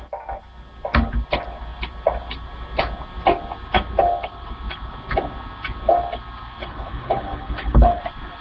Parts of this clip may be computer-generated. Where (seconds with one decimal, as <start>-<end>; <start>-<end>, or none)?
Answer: 6.6-8.0